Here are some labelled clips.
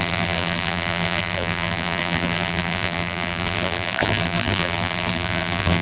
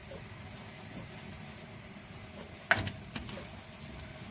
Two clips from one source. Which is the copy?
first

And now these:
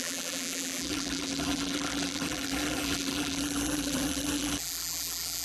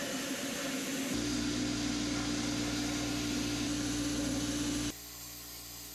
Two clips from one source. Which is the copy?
first